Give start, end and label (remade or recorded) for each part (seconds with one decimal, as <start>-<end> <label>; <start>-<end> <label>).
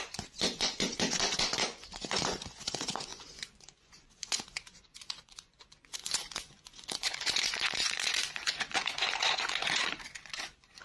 0.0-10.8 remade